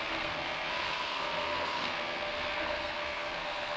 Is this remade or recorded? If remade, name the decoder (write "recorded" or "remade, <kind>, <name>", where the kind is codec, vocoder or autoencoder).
remade, codec, SNAC